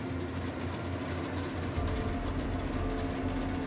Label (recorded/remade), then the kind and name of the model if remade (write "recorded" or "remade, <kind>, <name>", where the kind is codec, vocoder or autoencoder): recorded